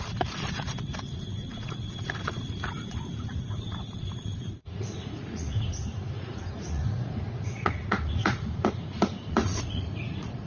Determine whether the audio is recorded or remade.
remade